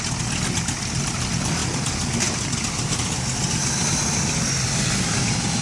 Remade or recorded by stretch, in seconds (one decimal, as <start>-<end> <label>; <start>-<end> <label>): 0.0-5.6 recorded